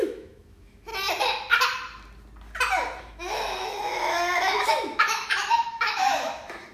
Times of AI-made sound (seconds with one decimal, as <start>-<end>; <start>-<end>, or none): 0.0-0.9; 3.0-6.7